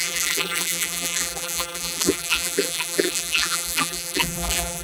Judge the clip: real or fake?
fake